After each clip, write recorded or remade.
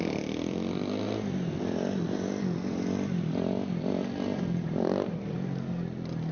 recorded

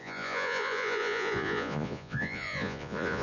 remade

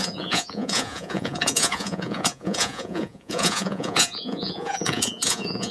remade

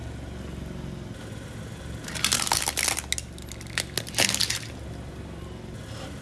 recorded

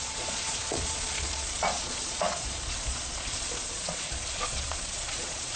remade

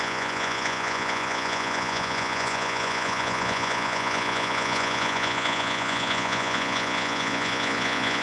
remade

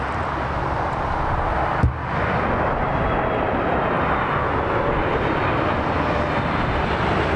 recorded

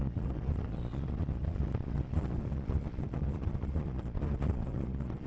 remade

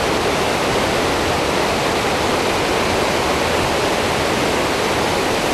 recorded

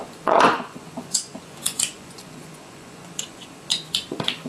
remade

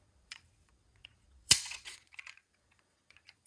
remade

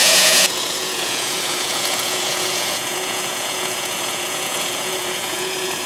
remade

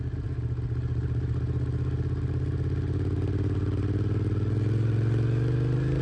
recorded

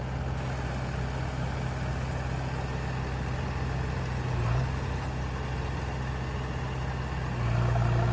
recorded